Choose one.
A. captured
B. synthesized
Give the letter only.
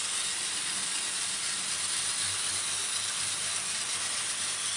A